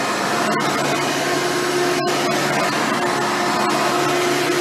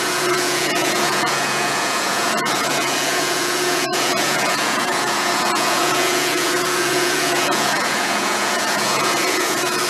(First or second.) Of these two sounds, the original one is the first